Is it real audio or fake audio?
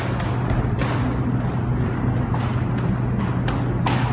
real